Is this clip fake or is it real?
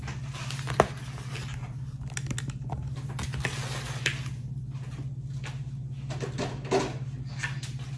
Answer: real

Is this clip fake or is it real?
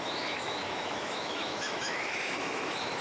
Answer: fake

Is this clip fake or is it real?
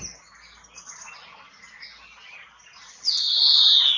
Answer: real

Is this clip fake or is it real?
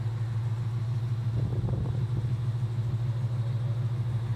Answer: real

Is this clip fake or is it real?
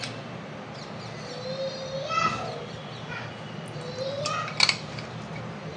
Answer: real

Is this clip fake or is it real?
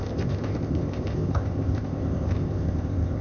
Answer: fake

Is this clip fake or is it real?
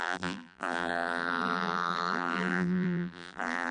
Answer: fake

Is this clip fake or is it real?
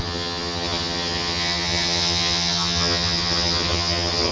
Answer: fake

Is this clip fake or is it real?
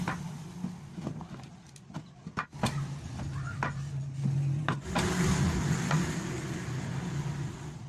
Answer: real